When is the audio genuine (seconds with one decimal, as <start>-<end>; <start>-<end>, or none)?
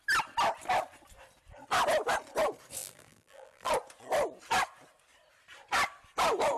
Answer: 0.0-2.8; 3.7-6.6